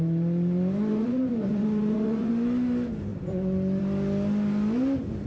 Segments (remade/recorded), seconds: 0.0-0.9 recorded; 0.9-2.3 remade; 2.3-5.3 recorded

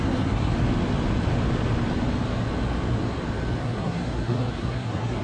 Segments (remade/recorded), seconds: 0.0-0.5 remade; 0.5-3.6 recorded; 3.6-5.2 remade

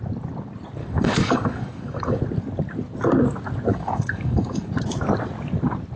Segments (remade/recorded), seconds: 0.0-0.8 recorded; 0.8-2.2 remade; 2.2-3.7 recorded; 3.7-4.7 remade; 4.7-6.0 recorded

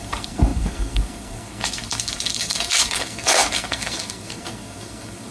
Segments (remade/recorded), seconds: 0.0-5.3 remade

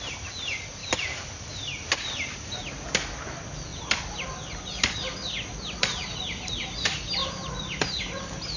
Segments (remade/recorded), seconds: 0.0-0.8 recorded; 0.8-1.3 remade; 1.3-3.7 recorded; 3.7-4.4 remade; 4.4-7.2 recorded; 7.2-8.0 remade; 8.0-8.6 recorded